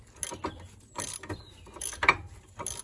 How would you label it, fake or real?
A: real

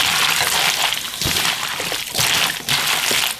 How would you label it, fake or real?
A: real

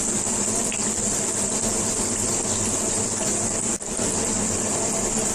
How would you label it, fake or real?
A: real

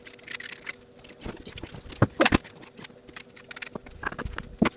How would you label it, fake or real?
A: real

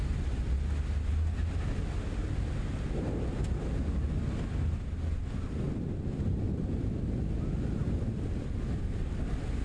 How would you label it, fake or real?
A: real